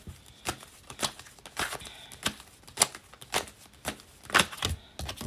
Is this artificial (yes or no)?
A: no